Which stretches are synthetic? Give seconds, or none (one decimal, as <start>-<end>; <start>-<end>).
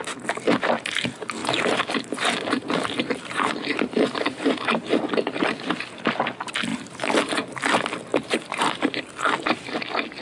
1.4-1.9; 2.6-5.0; 6.7-7.3; 8.1-9.0